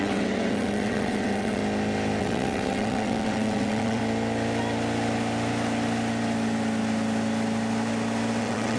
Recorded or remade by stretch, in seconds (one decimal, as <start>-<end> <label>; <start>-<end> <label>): 0.0-1.6 remade; 1.6-2.2 recorded; 2.2-4.0 remade; 4.0-8.4 recorded; 8.4-8.8 remade